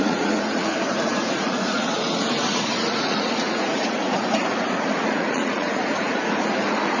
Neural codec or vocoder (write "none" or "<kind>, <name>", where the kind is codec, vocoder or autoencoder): vocoder, Vocos